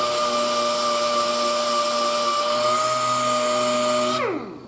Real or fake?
real